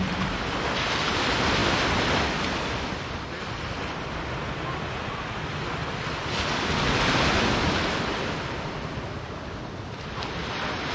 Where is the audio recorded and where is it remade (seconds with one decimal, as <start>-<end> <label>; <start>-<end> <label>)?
0.0-10.9 recorded